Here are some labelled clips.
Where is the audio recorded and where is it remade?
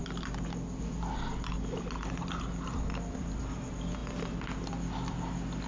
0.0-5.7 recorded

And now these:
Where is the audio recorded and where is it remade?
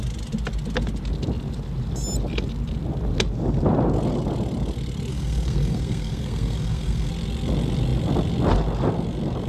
0.0-5.1 recorded; 5.1-7.1 remade; 7.1-9.5 recorded